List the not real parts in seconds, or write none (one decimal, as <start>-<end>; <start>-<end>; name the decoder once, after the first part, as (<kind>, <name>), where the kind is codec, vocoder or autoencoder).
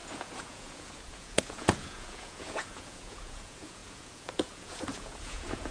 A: 0.0-5.7 (vocoder, Vocos)